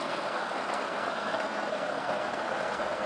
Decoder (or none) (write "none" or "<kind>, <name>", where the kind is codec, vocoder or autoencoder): codec, SNAC